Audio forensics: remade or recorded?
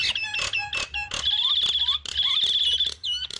recorded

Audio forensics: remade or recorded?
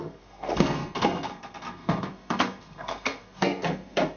remade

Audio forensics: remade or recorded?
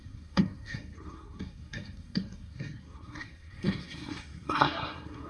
remade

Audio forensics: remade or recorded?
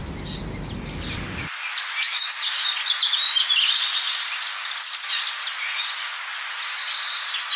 recorded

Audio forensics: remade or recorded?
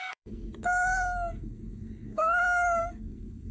remade